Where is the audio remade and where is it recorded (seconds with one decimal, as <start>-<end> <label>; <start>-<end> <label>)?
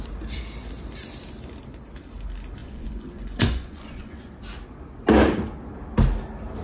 0.0-2.6 recorded; 2.6-4.3 remade; 4.3-6.6 recorded